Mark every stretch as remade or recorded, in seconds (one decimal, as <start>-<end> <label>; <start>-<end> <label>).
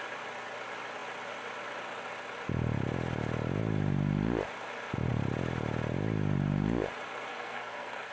0.0-7.3 recorded; 7.3-8.1 remade